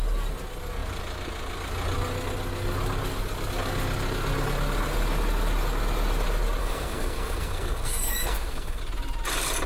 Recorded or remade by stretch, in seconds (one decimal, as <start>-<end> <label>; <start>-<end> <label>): 0.0-6.6 recorded; 6.6-8.8 remade; 8.8-9.7 recorded